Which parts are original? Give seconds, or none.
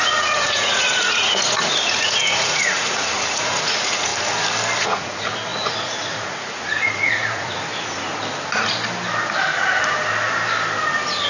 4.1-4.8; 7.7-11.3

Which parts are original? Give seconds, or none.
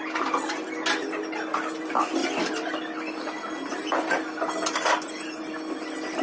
0.0-6.2